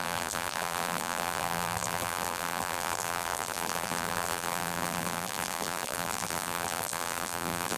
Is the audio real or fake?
fake